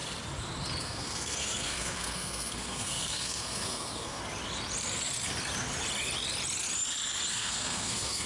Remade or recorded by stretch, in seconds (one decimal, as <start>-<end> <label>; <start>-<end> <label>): 0.0-0.8 recorded; 0.8-4.2 remade; 4.2-7.3 recorded; 7.3-8.3 remade